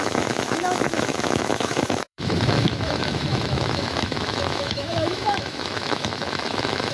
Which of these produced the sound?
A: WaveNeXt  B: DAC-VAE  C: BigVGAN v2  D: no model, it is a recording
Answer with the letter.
B